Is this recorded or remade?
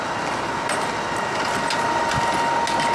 recorded